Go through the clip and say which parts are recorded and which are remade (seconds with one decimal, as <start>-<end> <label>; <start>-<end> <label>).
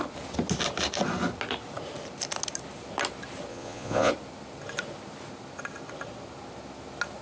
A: 0.0-3.5 recorded; 3.5-4.1 remade; 4.1-7.2 recorded